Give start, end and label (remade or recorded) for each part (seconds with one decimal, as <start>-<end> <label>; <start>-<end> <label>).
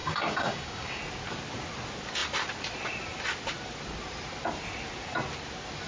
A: 0.0-1.0 remade; 1.0-5.9 recorded